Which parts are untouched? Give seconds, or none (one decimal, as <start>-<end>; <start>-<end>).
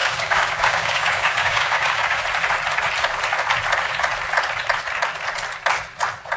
2.2-6.4